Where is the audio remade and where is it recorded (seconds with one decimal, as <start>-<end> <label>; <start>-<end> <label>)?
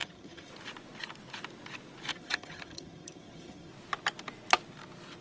0.0-0.5 remade; 0.5-2.1 recorded; 2.1-3.7 remade; 3.7-5.2 recorded